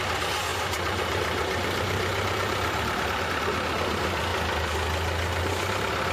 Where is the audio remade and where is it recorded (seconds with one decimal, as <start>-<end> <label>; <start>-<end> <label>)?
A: 0.0-0.5 recorded; 0.5-3.3 remade; 3.3-6.1 recorded